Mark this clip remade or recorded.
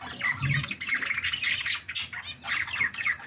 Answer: recorded